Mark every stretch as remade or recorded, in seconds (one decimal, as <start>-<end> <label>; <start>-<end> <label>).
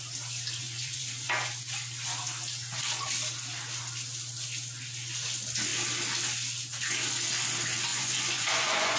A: 0.0-0.6 recorded; 0.6-1.5 remade; 1.5-7.9 recorded; 7.9-9.0 remade